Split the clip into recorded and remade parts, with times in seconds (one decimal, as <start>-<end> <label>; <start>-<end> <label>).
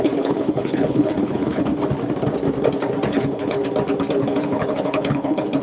0.0-1.7 remade; 1.7-3.1 recorded; 3.1-3.6 remade; 3.6-4.2 recorded; 4.2-5.6 remade